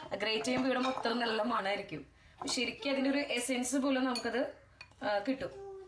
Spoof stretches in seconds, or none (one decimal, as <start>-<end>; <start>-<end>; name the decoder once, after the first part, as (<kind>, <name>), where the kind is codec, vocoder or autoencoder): 1.1-1.6 (codec, HILCodec)